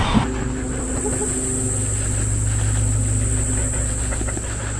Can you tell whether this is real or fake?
real